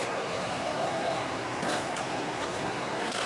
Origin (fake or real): fake